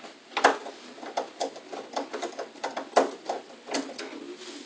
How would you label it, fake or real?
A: real